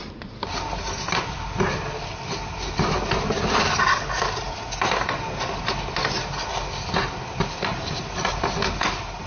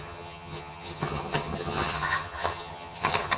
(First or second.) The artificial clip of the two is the second